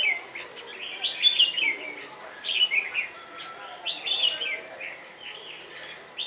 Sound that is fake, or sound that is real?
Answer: real